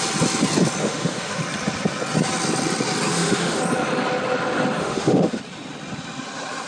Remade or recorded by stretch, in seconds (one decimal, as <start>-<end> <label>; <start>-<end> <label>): 0.0-0.8 recorded; 0.8-1.4 remade; 1.4-3.1 recorded; 3.1-3.6 remade; 3.6-4.8 recorded; 4.8-5.4 remade; 5.4-6.7 recorded